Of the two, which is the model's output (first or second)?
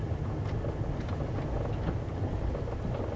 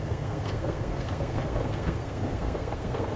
second